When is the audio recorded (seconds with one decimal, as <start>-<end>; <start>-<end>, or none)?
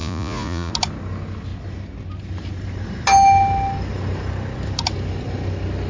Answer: 0.7-5.9